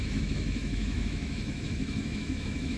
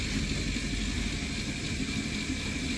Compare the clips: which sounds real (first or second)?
second